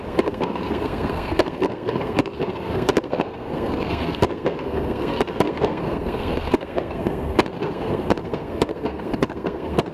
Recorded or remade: remade